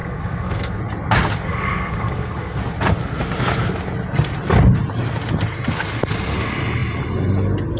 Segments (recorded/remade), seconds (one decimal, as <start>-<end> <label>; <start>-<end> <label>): 0.0-0.8 remade; 0.8-1.5 recorded; 1.5-2.6 remade; 2.6-7.8 recorded